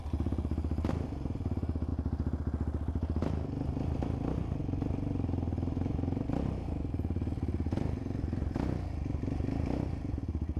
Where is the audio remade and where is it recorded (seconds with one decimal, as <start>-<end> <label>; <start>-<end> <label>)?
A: 0.0-10.6 recorded